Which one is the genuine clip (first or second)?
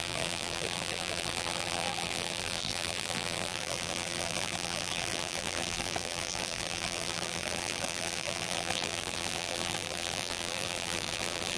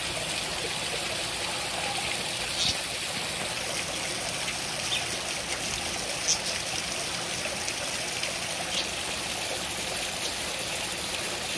second